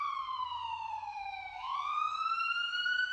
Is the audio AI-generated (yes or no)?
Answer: yes